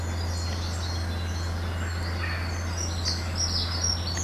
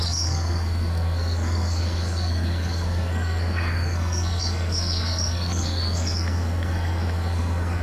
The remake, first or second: second